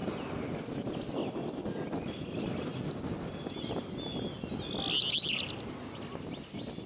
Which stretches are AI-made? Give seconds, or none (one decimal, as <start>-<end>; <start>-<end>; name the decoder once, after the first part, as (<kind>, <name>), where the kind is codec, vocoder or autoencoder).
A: none